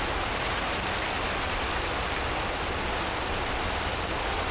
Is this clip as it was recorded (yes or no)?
yes